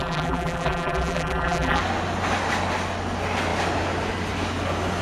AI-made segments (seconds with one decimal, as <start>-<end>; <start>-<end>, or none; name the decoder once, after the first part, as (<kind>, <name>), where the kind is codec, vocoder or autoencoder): 0.0-1.8 (vocoder, BigVGAN v2)